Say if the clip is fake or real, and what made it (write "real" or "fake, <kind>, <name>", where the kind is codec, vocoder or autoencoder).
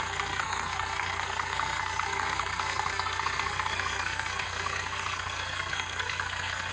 fake, codec, SNAC